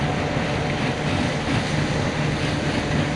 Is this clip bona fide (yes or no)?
yes